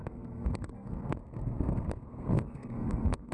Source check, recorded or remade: remade